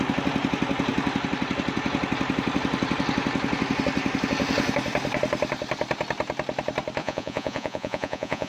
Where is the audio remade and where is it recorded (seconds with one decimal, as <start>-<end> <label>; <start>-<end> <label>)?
0.0-7.0 recorded; 7.0-8.5 remade